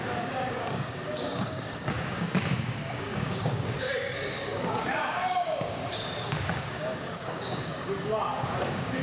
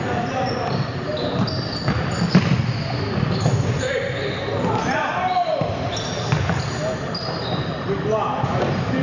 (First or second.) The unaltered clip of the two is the second